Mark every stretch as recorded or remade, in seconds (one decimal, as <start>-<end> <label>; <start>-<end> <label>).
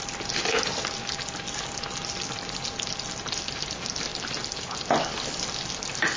0.0-6.2 recorded